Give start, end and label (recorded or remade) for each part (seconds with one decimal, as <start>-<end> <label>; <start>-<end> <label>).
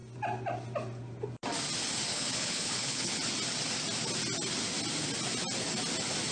0.0-2.1 recorded; 2.1-3.2 remade; 3.2-6.3 recorded